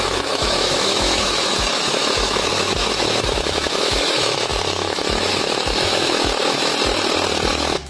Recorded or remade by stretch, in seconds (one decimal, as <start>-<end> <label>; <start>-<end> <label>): 0.0-6.7 remade; 6.7-7.5 recorded; 7.5-7.9 remade